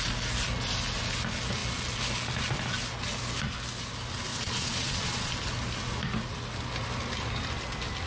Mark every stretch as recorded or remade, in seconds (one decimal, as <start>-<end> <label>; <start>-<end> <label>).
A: 0.0-4.3 recorded; 4.3-5.3 remade; 5.3-8.1 recorded